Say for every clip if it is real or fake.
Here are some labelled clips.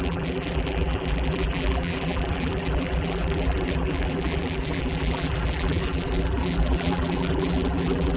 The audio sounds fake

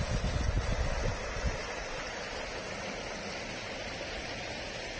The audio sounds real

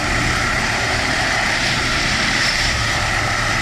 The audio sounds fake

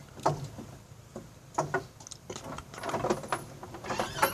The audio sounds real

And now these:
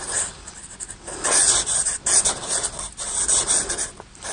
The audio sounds real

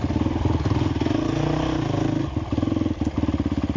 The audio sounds real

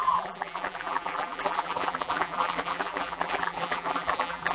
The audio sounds fake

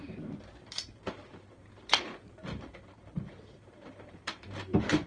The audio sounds fake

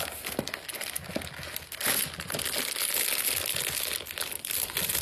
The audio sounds real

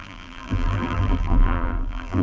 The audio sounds fake